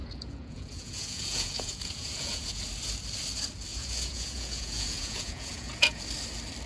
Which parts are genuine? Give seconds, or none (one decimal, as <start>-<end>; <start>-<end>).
2.6-3.7; 6.0-6.7